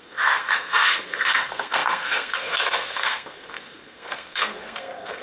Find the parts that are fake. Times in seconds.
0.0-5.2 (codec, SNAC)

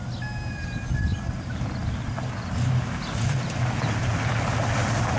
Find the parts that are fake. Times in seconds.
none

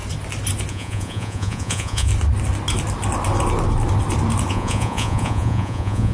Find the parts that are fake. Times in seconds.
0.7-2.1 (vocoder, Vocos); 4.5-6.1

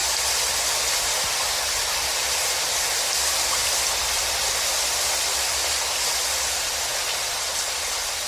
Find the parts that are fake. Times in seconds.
none